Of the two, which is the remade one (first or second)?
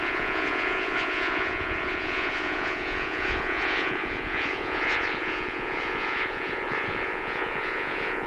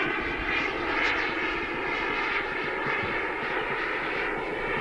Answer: first